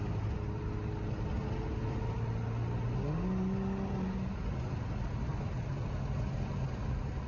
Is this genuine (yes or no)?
yes